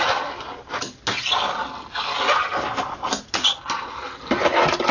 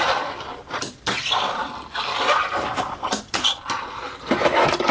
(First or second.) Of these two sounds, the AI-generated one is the second